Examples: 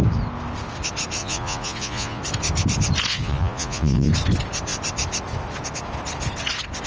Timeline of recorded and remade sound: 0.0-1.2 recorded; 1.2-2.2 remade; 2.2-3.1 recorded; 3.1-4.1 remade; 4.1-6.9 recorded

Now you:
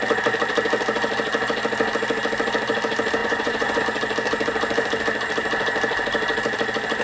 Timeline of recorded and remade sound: 0.0-3.2 recorded; 3.2-3.8 remade; 3.8-7.0 recorded

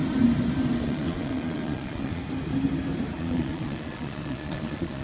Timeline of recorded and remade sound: 0.0-0.8 recorded; 0.8-2.2 remade; 2.2-3.2 recorded; 3.2-5.0 remade

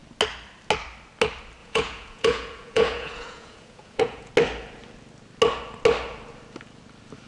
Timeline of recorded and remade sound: 0.0-1.6 recorded; 1.6-4.3 remade; 4.3-7.3 recorded

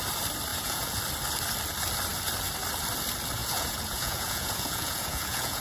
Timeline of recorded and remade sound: 0.0-0.5 recorded; 0.5-1.0 remade; 1.0-3.4 recorded; 3.4-5.6 remade

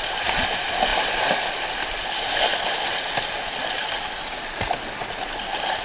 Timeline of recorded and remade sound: 0.0-5.8 recorded

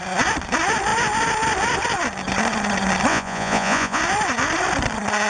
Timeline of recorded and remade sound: 0.0-3.1 recorded; 3.1-4.0 remade; 4.0-5.3 recorded

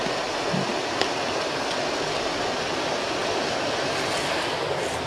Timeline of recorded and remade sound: 0.0-5.1 recorded